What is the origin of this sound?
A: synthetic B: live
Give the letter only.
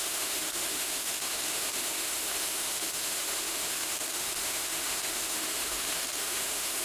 A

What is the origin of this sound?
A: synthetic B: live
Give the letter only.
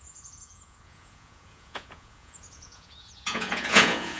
A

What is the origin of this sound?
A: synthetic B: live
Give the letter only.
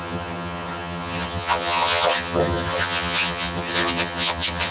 A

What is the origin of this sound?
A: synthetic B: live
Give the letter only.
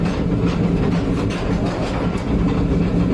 B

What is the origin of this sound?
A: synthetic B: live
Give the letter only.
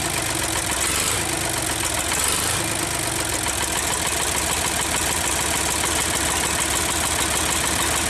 B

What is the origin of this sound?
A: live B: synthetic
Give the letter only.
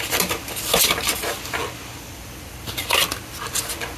A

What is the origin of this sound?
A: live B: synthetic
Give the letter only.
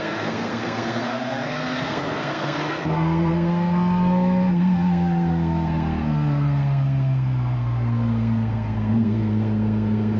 B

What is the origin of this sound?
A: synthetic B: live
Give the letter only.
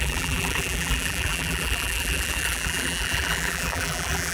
A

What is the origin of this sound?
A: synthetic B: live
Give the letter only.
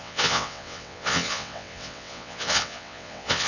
A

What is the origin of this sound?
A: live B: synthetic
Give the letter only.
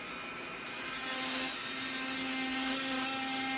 A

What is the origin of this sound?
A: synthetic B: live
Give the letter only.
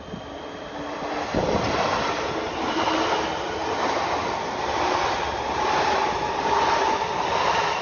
B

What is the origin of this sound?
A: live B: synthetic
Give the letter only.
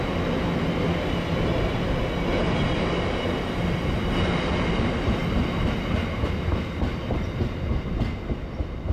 A